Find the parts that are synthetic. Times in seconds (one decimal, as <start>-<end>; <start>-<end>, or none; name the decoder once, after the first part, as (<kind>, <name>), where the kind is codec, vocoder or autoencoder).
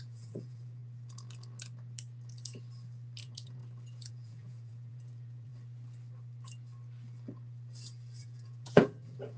0.0-0.8 (vocoder, Vocos); 3.2-3.6; 4.1-5.5; 8.2-9.4